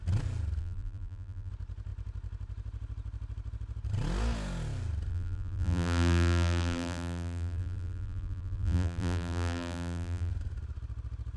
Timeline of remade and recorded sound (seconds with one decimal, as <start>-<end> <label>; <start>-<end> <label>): 0.0-0.6 recorded; 0.6-1.5 remade; 1.5-5.1 recorded; 5.1-10.3 remade; 10.3-11.4 recorded